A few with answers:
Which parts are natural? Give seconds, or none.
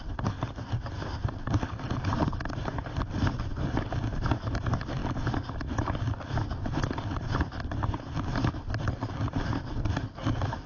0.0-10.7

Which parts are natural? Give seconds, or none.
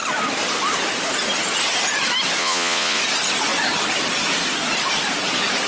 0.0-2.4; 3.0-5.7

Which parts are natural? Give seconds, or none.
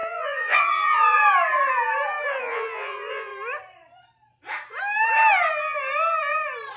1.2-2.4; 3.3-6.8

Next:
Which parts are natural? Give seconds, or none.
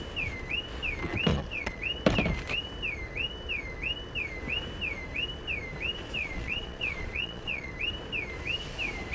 0.0-1.3; 1.8-6.2; 7.7-9.1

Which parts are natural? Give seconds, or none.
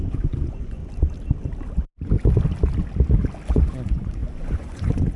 0.8-3.7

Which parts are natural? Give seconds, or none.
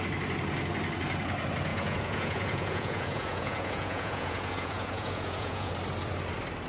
0.0-1.7; 5.7-6.7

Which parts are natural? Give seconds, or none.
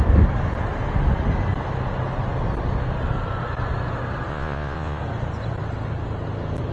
0.0-4.3; 5.0-6.7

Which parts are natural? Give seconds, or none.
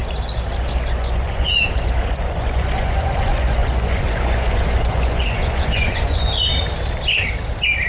0.0-0.6; 6.5-7.9